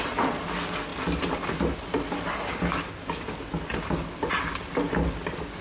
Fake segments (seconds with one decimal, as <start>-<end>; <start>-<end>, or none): none